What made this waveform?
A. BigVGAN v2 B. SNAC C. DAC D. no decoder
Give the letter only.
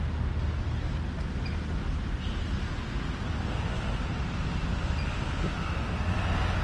D